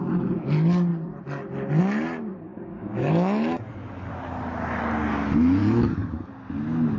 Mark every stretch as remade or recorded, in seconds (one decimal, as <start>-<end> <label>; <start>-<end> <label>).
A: 0.0-2.5 recorded; 2.5-4.1 remade; 4.1-5.6 recorded; 5.6-6.3 remade; 6.3-7.0 recorded